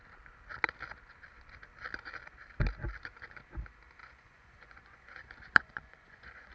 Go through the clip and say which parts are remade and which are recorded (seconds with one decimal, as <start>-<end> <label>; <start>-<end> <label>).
0.0-4.0 recorded; 4.0-6.5 remade